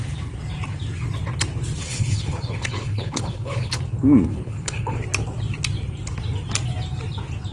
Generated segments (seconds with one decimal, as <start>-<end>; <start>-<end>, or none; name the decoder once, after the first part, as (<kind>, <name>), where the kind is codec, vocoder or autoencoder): 1.8-3.7 (codec, HILCodec); 4.3-5.0